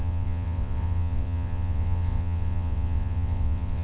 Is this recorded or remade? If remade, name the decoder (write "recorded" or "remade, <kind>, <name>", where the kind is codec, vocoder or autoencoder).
remade, vocoder, WaveNeXt